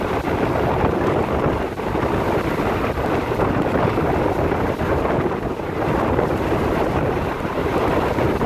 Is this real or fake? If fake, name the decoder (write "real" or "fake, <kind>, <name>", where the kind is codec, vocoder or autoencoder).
fake, vocoder, BigVGAN v2